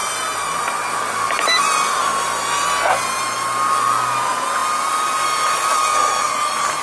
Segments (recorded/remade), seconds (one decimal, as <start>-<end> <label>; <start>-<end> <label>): 0.0-0.6 remade; 0.6-6.8 recorded